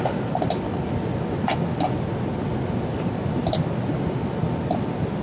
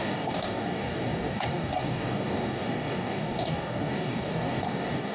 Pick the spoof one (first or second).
second